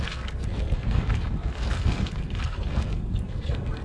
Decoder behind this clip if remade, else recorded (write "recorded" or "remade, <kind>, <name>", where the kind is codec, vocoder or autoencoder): remade, codec, SNAC